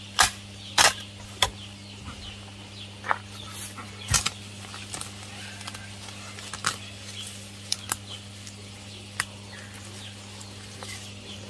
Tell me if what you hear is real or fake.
real